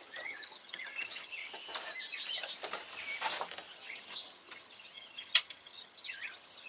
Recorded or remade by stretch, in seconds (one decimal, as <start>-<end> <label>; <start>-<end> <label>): 0.0-1.4 remade; 1.4-3.7 recorded; 3.7-6.7 remade